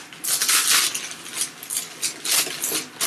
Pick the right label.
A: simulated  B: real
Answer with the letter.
B